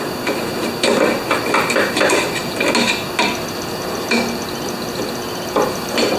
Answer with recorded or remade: recorded